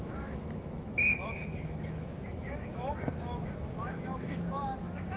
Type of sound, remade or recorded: remade